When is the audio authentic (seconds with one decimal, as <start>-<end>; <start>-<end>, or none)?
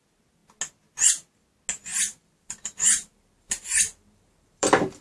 0.0-1.9